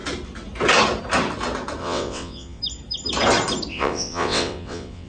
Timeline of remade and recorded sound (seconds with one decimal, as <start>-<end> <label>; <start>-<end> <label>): 0.0-1.8 recorded; 1.8-2.6 remade; 2.6-3.7 recorded; 3.7-5.1 remade